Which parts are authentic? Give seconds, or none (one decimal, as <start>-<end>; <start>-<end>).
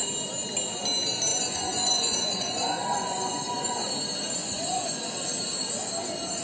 0.0-1.3; 3.9-4.4; 5.0-6.4